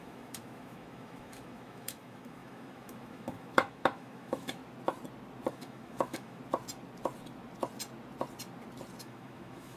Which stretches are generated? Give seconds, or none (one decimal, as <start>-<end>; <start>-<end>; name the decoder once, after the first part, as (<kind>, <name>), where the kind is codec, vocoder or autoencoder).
0.0-4.6 (autoencoder, DAC-VAE); 5.5-6.4; 9.0-9.8